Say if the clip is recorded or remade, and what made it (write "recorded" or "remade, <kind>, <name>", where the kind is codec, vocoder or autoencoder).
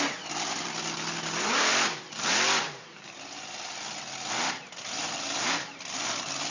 recorded